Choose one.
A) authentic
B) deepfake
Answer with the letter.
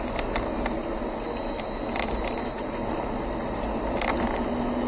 A